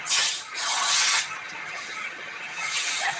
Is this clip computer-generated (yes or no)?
yes